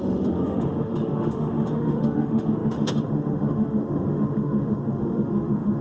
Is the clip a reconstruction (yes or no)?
yes